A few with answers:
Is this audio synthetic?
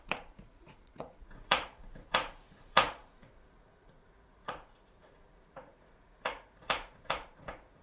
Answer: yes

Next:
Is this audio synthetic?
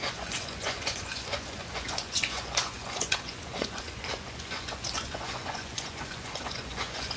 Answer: yes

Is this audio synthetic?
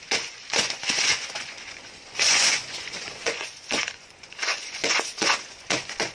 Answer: yes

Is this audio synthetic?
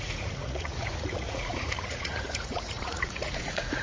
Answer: yes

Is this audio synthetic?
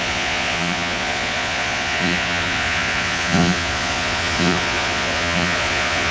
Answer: yes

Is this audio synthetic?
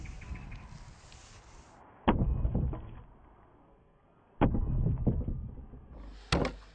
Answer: no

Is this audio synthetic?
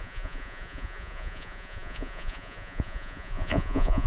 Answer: yes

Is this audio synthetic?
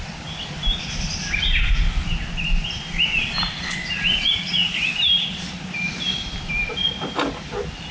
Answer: no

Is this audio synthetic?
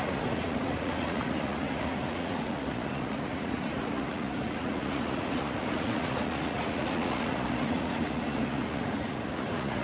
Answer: yes